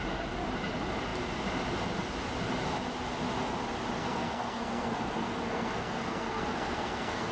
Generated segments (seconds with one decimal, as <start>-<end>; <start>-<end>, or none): 4.0-7.3

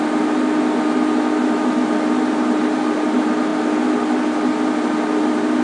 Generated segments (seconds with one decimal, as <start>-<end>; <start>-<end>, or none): none